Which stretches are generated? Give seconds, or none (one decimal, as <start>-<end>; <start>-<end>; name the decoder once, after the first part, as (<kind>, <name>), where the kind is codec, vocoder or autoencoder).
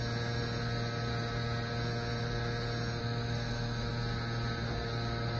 3.0-3.9 (autoencoder, DAC-VAE)